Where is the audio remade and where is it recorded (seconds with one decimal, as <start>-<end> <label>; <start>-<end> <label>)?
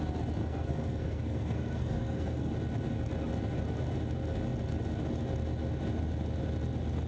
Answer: 0.0-0.4 recorded; 0.4-2.5 remade; 2.5-7.1 recorded